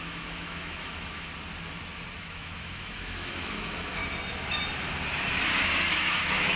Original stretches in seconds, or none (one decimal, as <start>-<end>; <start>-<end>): 1.3-2.2; 4.0-5.9